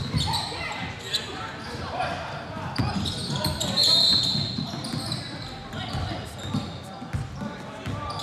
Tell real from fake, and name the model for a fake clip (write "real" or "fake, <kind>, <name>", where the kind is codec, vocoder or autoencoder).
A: real